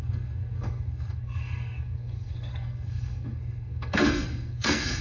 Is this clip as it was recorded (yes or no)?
no